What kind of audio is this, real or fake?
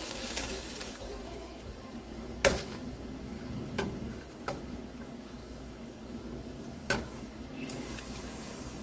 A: fake